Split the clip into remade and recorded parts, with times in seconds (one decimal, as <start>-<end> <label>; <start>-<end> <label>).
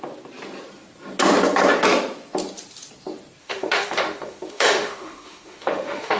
0.0-3.4 recorded; 3.4-6.2 remade